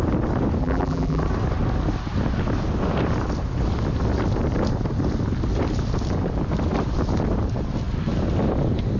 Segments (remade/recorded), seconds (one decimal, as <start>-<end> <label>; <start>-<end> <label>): 0.0-0.6 recorded; 0.6-1.2 remade; 1.2-9.0 recorded